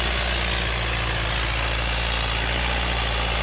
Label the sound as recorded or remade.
recorded